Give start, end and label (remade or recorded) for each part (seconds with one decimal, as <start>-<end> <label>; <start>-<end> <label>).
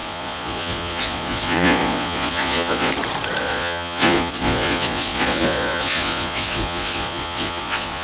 0.0-2.9 remade; 2.9-3.4 recorded; 3.4-8.0 remade